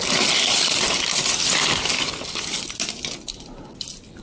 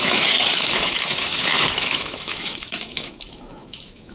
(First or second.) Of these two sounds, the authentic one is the first